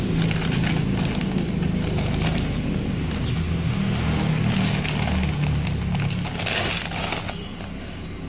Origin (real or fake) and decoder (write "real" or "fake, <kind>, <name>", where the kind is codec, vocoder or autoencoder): real